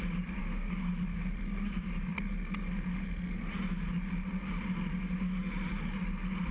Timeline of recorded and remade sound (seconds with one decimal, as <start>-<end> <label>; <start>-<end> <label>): 0.0-0.4 recorded; 0.4-0.9 remade; 0.9-6.5 recorded